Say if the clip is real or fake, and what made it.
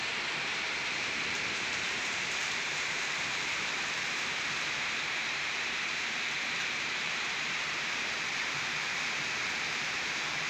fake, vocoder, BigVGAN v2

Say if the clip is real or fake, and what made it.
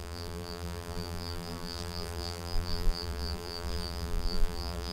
fake, vocoder, BigVGAN v2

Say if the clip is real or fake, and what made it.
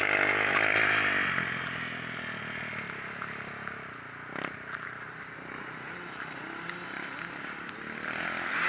real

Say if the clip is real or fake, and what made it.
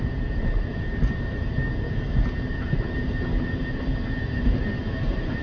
fake, vocoder, BigVGAN v2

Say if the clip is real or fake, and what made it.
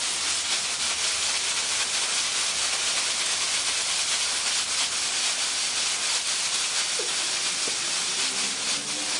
real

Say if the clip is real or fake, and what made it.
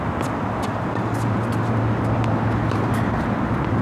real